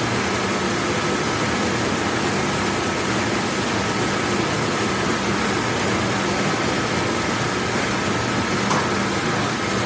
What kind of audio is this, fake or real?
real